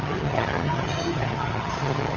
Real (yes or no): no